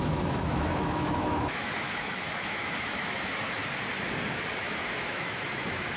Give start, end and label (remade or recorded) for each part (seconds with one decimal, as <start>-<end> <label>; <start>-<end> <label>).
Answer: 0.0-3.6 remade; 3.6-4.6 recorded; 4.6-6.0 remade